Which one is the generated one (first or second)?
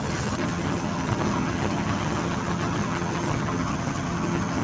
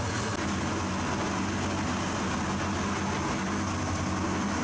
first